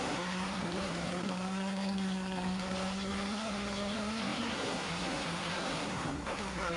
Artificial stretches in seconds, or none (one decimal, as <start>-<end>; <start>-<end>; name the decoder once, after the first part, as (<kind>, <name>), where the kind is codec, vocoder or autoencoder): 0.0-6.8 (codec, SNAC)